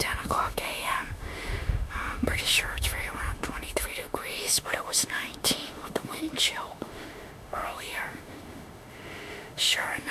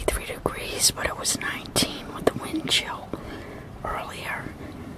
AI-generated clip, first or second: first